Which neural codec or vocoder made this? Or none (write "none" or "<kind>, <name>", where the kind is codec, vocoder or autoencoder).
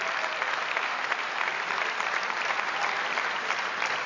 none